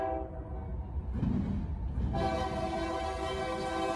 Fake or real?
real